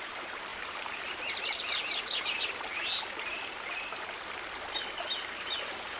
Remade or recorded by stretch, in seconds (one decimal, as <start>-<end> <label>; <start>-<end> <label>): 0.0-0.5 recorded; 0.5-1.0 remade; 1.0-6.0 recorded